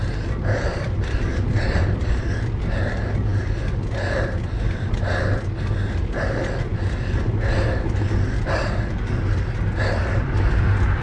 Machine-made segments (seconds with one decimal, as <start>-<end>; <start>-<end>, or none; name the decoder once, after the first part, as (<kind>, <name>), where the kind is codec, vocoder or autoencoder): 6.7-7.3 (vocoder, BigVGAN v2)